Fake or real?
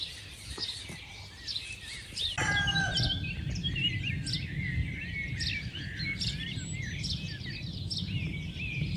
real